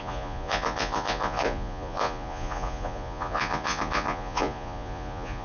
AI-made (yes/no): yes